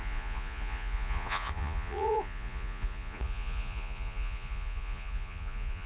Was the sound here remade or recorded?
remade